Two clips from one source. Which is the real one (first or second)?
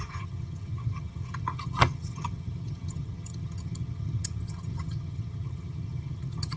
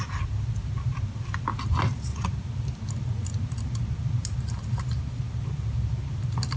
second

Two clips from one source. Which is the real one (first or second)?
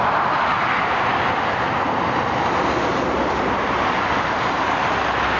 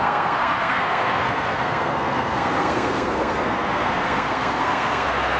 first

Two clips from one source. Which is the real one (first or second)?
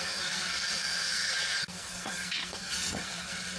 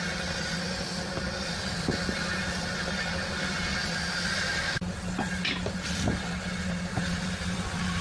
second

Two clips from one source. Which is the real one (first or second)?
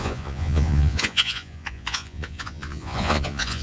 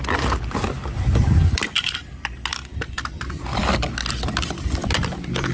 second